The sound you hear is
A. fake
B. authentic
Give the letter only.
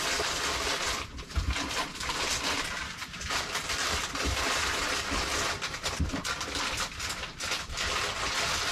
B